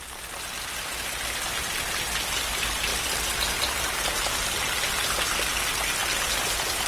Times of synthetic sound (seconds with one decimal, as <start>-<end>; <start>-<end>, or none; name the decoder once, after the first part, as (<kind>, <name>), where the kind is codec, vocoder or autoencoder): none